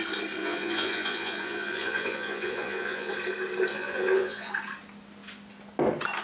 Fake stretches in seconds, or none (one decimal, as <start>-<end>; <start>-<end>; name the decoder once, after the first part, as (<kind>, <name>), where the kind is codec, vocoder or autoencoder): 0.4-3.1 (vocoder, Vocos); 3.7-4.5